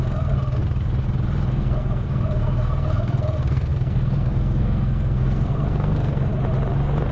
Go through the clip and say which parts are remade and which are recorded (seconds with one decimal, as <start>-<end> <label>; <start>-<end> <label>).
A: 0.0-0.6 remade; 0.6-1.5 recorded; 1.5-6.3 remade; 6.3-7.1 recorded